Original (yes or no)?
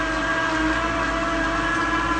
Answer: yes